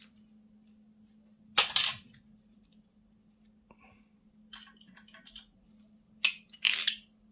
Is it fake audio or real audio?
real